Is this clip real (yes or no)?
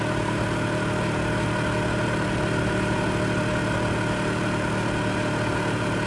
yes